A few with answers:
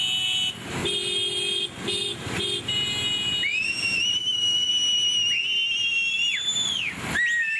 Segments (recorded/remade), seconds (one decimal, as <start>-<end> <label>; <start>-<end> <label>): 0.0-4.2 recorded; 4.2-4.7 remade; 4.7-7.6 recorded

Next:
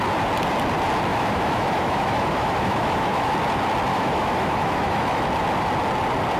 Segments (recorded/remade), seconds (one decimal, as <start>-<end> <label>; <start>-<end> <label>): 0.0-1.1 recorded; 1.1-3.3 remade; 3.3-3.9 recorded; 3.9-5.3 remade; 5.3-6.4 recorded

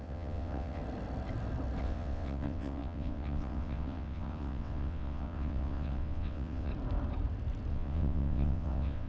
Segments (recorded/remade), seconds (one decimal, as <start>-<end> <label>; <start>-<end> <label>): 0.0-0.8 remade; 0.8-1.8 recorded; 1.8-6.7 remade; 6.7-7.7 recorded; 7.7-9.1 remade

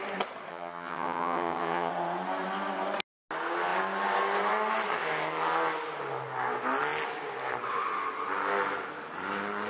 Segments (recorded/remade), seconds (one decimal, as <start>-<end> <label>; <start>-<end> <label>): 0.0-0.5 recorded; 0.5-1.9 remade; 1.9-9.7 recorded